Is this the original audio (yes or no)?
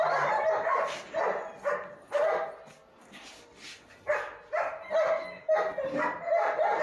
yes